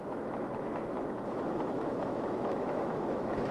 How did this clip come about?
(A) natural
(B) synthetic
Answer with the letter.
B